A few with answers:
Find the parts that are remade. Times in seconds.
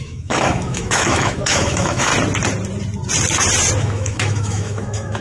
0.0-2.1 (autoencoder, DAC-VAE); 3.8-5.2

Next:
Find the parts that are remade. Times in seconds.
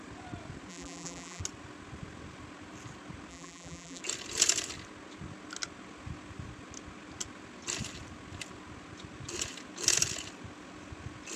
0.7-1.4 (vocoder, BigVGAN v2); 3.3-4.0